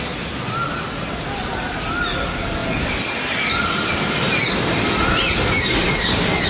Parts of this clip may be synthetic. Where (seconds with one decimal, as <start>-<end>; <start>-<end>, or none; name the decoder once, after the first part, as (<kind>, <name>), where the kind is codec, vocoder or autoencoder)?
none

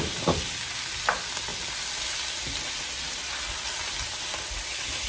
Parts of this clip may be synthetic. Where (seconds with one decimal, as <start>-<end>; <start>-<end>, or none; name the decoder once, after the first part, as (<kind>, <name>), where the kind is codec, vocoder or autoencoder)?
none

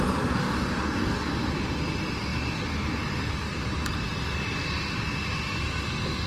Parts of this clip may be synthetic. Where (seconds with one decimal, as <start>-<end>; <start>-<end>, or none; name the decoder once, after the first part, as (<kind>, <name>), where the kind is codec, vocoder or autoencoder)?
0.4-1.3 (codec, DAC)

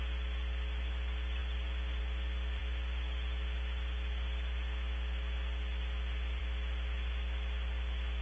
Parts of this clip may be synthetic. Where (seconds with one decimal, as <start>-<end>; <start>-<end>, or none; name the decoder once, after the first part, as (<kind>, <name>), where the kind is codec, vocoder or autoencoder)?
none

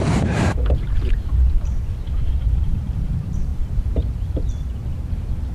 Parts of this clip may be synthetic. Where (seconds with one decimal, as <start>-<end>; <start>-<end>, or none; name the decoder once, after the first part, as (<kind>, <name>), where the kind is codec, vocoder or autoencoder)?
0.0-5.5 (vocoder, BigVGAN v2)